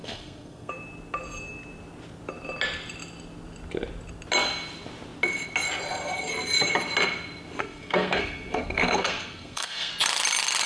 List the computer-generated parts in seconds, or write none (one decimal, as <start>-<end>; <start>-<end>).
0.0-0.7; 7.6-9.9